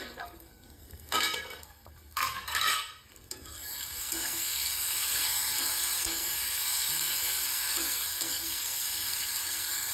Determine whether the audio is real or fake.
fake